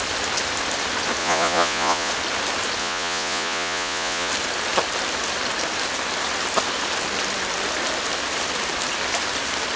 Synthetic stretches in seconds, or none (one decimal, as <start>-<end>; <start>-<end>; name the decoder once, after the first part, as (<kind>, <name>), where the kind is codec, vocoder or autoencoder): 1.2-2.1 (vocoder, Vocos); 2.8-4.3